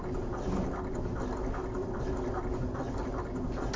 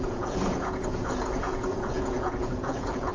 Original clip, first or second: first